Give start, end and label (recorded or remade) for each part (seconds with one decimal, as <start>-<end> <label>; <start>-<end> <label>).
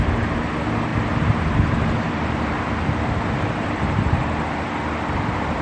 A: 0.0-0.9 recorded; 0.9-4.3 remade; 4.3-5.6 recorded